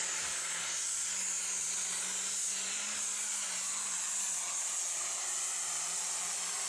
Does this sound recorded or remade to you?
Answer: recorded